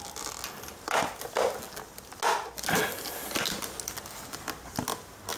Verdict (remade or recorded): recorded